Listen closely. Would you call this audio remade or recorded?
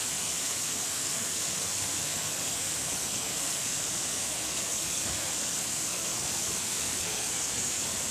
remade